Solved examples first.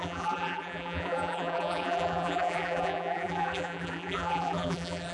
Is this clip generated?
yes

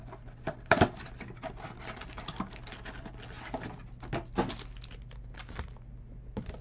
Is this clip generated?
no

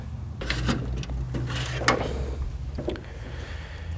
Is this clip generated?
no